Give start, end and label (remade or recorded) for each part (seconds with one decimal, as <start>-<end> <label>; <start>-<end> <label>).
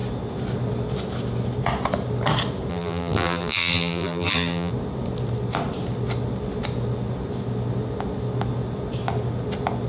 0.0-2.7 recorded; 2.7-4.7 remade; 4.7-9.9 recorded